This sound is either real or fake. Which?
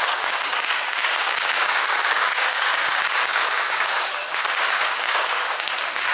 fake